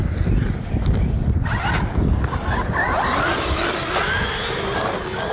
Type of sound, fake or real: real